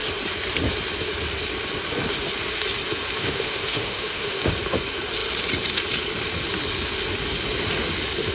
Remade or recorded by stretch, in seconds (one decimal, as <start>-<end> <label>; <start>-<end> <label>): 0.0-3.2 recorded; 3.2-4.4 remade; 4.4-8.3 recorded